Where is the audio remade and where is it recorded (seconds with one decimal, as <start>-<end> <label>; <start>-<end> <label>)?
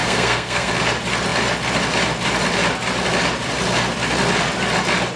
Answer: 0.0-0.7 remade; 0.7-5.2 recorded